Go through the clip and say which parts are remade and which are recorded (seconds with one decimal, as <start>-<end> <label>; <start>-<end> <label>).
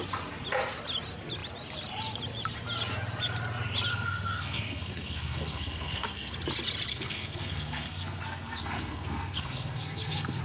0.0-3.9 recorded; 3.9-6.3 remade; 6.3-6.9 recorded; 6.9-10.4 remade